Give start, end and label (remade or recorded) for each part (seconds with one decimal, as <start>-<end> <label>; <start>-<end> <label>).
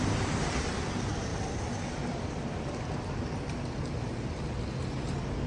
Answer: 0.0-5.5 recorded